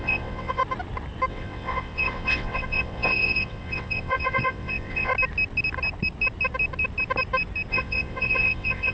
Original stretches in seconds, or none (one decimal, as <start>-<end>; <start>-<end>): 0.6-1.3; 5.1-7.7